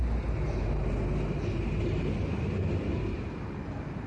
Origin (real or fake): real